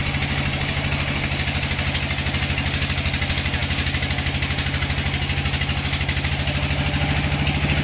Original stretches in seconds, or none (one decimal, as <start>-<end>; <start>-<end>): 0.0-7.8